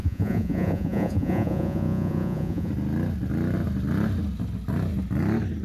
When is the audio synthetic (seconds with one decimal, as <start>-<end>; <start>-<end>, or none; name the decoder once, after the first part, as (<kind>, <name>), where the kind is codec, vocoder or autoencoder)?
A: 0.0-2.7 (vocoder, Vocos)